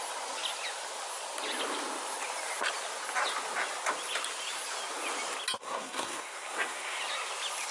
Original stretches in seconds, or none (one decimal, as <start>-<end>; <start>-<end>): 0.0-5.6; 7.0-7.7